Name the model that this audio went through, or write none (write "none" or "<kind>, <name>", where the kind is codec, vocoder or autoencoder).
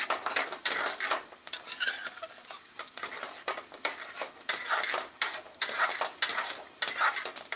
none